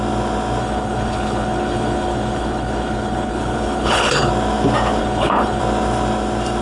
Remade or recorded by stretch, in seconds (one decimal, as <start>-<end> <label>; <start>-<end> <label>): 0.0-0.6 recorded; 0.6-4.3 remade; 4.3-5.0 recorded; 5.0-5.6 remade; 5.6-6.6 recorded